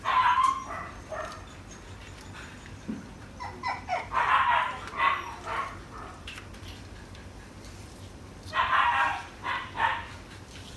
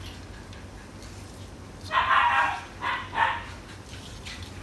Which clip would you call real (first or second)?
second